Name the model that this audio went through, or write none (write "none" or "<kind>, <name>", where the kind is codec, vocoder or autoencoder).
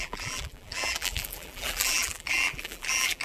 vocoder, BigVGAN v2